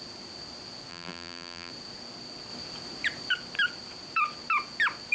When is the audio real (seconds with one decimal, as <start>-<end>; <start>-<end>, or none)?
0.0-0.9; 1.7-5.1